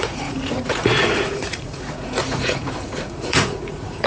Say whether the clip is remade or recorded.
remade